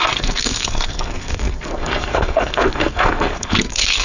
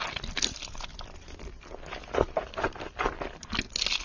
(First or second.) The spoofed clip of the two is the first